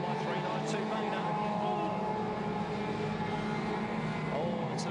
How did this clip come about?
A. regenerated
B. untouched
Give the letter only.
B